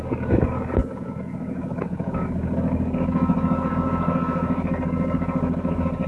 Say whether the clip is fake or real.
fake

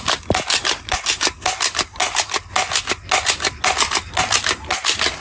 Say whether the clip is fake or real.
real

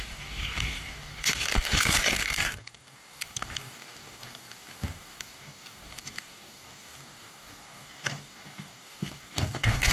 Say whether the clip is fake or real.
fake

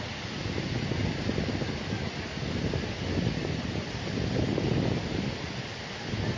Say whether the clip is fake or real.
real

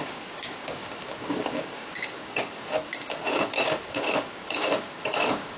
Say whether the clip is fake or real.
fake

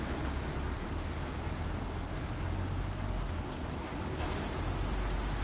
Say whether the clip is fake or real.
real